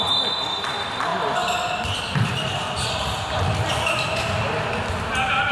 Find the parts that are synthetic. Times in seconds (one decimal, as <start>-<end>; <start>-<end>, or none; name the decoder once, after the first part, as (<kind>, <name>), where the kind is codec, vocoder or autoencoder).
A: none